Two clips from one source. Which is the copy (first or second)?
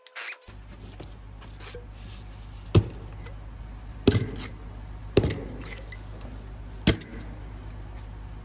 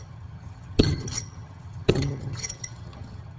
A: second